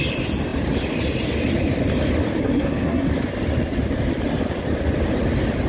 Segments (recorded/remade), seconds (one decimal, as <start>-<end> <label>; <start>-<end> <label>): 0.0-2.4 recorded; 2.4-3.1 remade; 3.1-5.7 recorded